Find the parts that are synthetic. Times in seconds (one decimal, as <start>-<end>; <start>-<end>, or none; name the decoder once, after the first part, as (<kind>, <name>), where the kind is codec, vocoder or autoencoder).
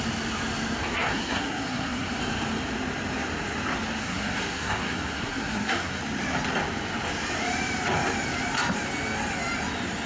0.9-2.2 (codec, SNAC); 4.0-6.0